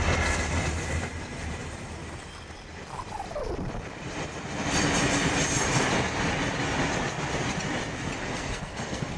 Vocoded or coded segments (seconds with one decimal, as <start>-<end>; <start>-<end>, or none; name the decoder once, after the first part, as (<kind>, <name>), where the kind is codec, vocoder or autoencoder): 8.2-9.2 (codec, SNAC)